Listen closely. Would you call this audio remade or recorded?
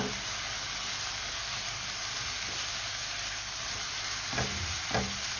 recorded